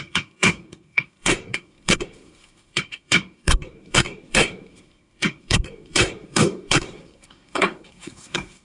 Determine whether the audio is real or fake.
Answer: fake